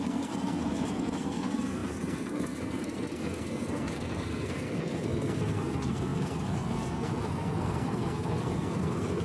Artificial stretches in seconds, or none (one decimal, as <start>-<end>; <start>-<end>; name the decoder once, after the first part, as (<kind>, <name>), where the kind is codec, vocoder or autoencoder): 0.0-9.2 (codec, SNAC)